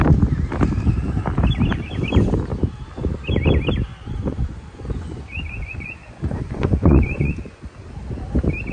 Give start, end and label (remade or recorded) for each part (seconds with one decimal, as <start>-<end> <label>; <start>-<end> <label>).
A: 0.0-3.9 recorded; 3.9-7.6 remade; 7.6-8.7 recorded

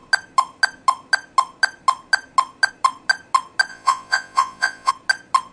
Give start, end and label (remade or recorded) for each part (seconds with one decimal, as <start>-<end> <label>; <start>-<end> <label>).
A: 0.0-3.7 recorded; 3.7-4.9 remade; 4.9-5.5 recorded